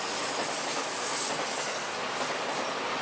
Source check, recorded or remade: recorded